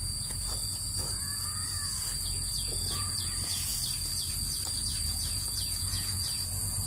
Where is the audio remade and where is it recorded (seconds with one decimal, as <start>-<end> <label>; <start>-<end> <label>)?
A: 0.0-3.7 remade; 3.7-5.0 recorded; 5.0-6.9 remade